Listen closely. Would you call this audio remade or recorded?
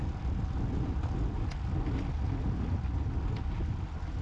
recorded